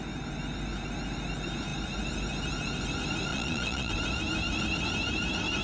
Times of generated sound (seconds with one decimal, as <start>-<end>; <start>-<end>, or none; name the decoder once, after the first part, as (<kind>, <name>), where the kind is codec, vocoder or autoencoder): 3.3-3.9 (vocoder, Vocos)